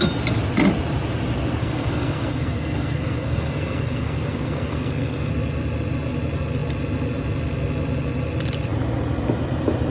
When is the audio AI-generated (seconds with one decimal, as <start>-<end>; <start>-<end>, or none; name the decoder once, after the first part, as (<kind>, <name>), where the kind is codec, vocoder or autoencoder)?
1.6-5.3 (codec, SNAC)